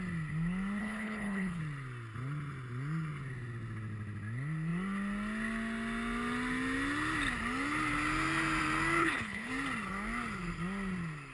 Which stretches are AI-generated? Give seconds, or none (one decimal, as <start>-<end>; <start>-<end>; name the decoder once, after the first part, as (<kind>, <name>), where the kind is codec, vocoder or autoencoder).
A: 0.8-1.6 (codec, HILCodec); 9.0-9.5